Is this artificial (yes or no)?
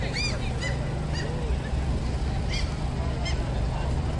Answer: no